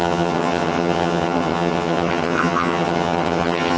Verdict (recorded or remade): remade